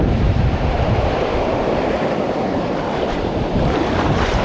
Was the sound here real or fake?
fake